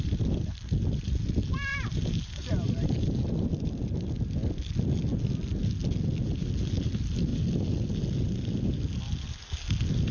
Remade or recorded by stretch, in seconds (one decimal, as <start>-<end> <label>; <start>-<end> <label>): 0.0-1.7 recorded; 1.7-3.3 remade; 3.3-10.1 recorded